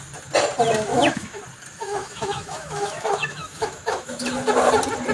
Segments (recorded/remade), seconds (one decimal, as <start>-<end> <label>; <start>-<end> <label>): 0.0-0.9 recorded; 0.9-1.4 remade; 1.4-1.8 recorded; 1.8-4.2 remade; 4.2-5.1 recorded